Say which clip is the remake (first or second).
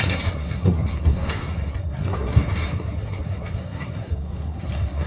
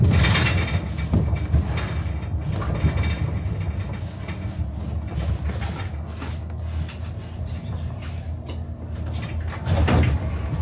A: first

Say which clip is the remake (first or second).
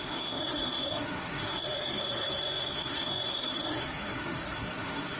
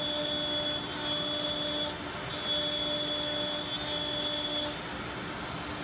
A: first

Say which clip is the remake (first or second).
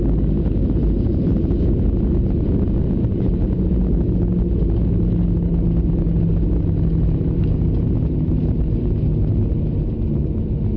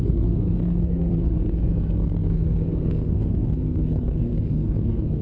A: second